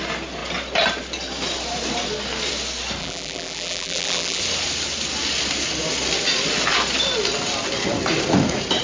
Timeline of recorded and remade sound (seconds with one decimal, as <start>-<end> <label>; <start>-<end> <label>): 0.0-3.0 recorded; 3.0-4.4 remade; 4.4-8.8 recorded